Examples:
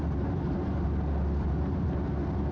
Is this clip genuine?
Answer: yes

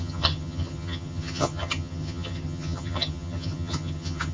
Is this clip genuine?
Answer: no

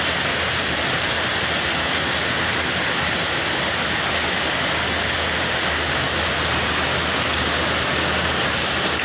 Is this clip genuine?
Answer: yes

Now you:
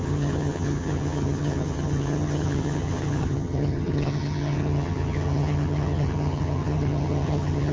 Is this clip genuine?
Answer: no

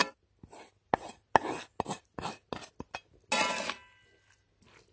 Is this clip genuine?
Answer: yes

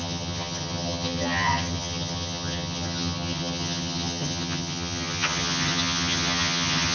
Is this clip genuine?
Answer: no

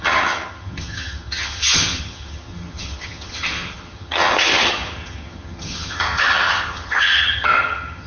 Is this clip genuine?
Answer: no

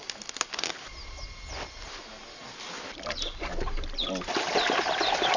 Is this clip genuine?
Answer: yes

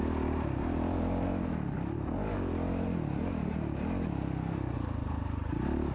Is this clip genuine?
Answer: yes